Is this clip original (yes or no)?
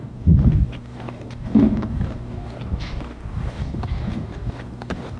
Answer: no